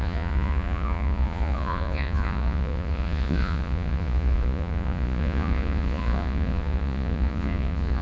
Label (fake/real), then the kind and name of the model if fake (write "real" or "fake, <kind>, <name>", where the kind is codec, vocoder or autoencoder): fake, vocoder, Vocos